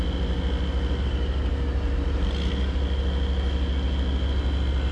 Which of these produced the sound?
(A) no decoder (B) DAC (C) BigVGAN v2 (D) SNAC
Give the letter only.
A